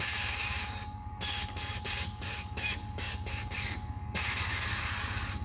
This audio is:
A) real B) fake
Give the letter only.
B